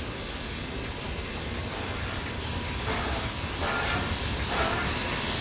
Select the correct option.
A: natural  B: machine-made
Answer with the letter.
A